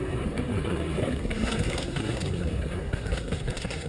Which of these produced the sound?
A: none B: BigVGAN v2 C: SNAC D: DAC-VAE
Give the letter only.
C